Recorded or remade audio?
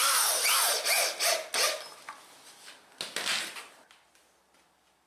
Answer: recorded